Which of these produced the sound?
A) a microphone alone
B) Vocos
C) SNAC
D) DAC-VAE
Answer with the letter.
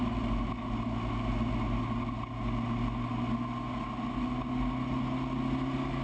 A